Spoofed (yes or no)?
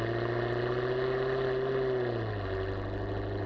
no